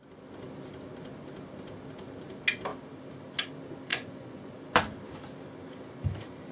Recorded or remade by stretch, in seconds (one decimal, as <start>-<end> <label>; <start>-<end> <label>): 0.0-3.9 recorded; 3.9-4.5 remade; 4.5-6.5 recorded

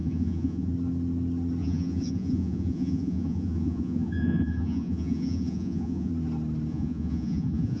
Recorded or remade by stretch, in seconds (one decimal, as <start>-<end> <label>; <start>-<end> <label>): 0.0-0.7 remade; 0.7-1.6 recorded; 1.6-6.1 remade; 6.1-6.7 recorded; 6.7-7.8 remade

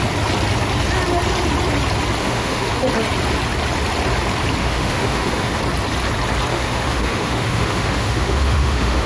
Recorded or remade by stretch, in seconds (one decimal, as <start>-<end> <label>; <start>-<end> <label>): 0.0-2.2 recorded; 2.2-2.7 remade; 2.7-4.6 recorded; 4.6-5.6 remade; 5.6-6.5 recorded; 6.5-9.1 remade

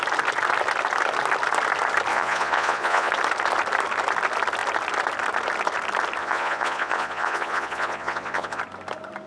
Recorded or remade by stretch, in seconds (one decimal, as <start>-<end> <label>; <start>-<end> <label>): 0.0-2.1 recorded; 2.1-3.1 remade; 3.1-6.2 recorded; 6.2-8.6 remade; 8.6-9.3 recorded

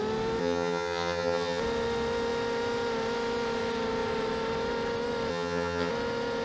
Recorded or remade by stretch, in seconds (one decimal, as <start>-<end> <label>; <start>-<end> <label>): 0.0-0.4 recorded; 0.4-1.6 remade; 1.6-5.3 recorded; 5.3-5.9 remade; 5.9-6.4 recorded

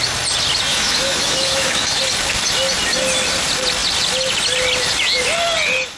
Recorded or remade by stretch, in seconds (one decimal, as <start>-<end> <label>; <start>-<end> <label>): 0.0-0.7 recorded; 0.7-2.0 remade; 2.0-6.0 recorded

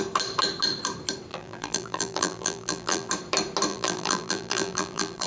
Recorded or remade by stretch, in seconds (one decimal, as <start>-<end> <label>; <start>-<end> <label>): 0.0-1.3 recorded; 1.3-3.1 remade; 3.1-3.7 recorded; 3.7-5.3 remade